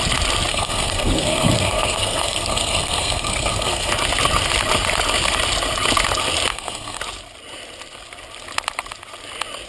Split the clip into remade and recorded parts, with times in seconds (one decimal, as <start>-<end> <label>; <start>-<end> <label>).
0.0-0.5 recorded; 0.5-3.9 remade; 3.9-6.5 recorded; 6.5-7.0 remade; 7.0-9.7 recorded